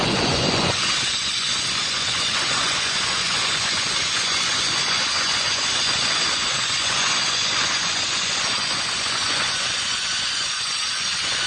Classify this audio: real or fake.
fake